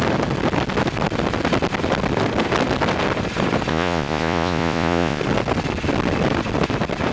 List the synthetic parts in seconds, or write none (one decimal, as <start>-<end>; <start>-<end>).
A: 3.7-5.2